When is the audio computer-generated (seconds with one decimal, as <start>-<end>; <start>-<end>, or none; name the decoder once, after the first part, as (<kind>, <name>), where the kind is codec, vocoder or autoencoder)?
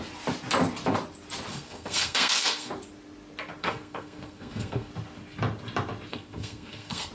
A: 1.5-2.7 (codec, SNAC); 3.6-4.9; 6.1-7.1